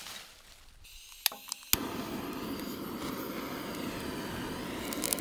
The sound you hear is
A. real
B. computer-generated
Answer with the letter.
A